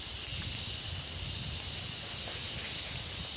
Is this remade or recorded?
recorded